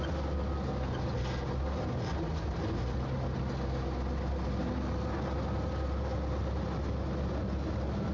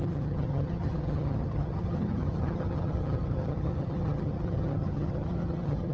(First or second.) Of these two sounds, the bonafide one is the first